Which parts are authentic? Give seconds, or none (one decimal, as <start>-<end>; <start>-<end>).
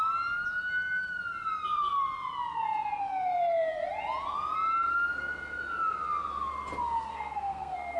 0.0-7.1